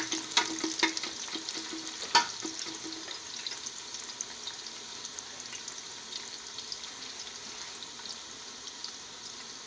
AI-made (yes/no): no